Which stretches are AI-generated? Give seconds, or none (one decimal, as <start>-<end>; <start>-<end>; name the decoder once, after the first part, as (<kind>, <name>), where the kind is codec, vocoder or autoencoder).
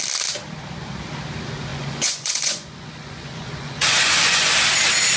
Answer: 1.7-4.5 (vocoder, Vocos)